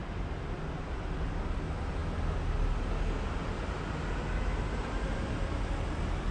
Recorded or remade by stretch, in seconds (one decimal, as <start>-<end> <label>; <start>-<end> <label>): 0.0-6.3 recorded